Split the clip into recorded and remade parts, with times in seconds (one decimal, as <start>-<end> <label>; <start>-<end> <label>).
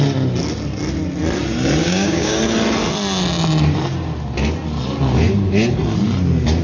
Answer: 0.0-1.8 recorded; 1.8-2.4 remade; 2.4-6.6 recorded